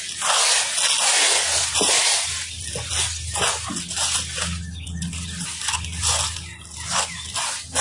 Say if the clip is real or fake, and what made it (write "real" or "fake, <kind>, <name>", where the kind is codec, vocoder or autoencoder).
real